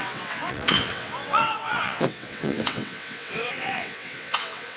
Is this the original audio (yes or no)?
no